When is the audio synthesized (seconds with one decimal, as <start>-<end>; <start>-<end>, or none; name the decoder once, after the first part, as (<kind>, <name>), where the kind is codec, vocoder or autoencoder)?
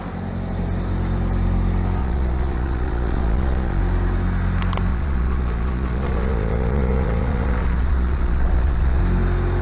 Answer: 2.0-3.8 (vocoder, Vocos); 4.9-9.0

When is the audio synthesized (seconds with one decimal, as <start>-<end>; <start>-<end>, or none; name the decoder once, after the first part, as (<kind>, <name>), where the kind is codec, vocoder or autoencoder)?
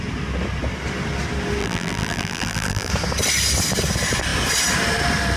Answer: 1.6-2.9 (vocoder, BigVGAN v2)